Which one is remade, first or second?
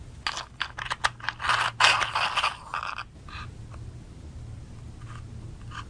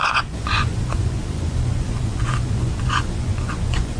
second